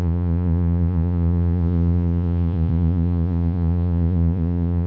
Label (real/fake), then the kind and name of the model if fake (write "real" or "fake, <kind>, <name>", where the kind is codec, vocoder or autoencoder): fake, vocoder, Vocos